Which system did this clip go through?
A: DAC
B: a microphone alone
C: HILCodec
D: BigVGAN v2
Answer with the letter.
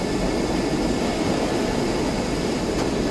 B